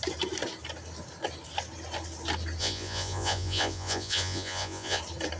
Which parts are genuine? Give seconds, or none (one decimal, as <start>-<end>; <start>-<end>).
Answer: 0.0-2.6; 5.0-5.4

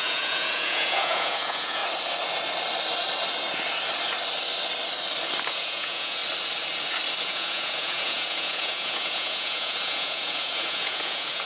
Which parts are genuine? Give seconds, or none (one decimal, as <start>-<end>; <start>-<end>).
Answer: 1.8-5.5; 6.2-7.2

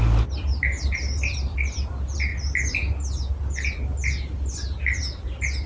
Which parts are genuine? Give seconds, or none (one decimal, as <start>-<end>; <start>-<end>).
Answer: 0.0-5.7

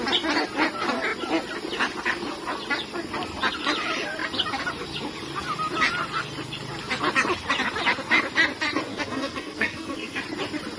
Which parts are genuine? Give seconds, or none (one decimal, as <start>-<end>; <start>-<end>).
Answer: 0.0-8.9; 10.2-10.8

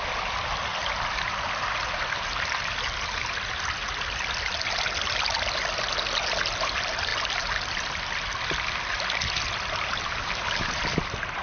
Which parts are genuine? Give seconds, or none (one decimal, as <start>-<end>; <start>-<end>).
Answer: 0.0-11.4

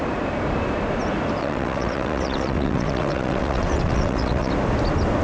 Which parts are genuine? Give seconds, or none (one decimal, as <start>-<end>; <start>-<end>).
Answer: 0.0-1.4; 4.5-5.2